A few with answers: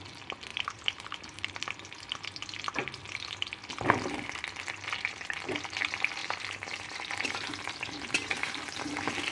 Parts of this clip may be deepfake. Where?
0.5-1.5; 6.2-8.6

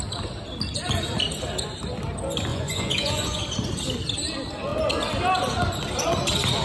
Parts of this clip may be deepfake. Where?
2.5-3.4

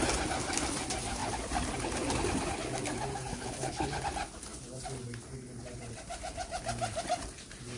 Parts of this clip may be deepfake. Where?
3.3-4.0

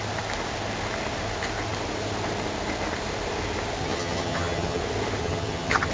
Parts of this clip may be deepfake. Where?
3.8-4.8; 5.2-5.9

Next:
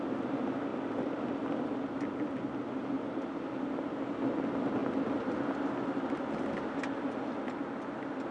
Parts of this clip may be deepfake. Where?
0.7-2.7

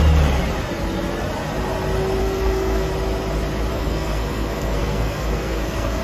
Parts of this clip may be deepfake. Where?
2.2-2.9; 3.7-6.0

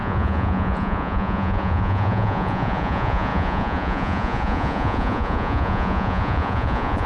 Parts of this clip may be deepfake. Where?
0.0-7.1